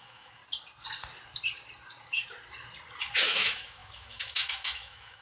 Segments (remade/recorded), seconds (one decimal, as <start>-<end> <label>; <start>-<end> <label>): 0.0-0.4 remade; 0.4-3.1 recorded; 3.1-5.2 remade